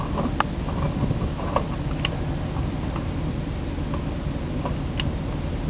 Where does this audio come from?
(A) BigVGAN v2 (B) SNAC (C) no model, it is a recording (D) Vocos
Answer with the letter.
C